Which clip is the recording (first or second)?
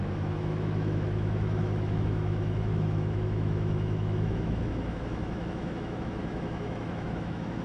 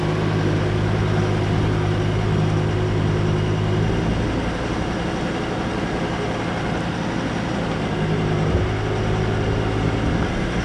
second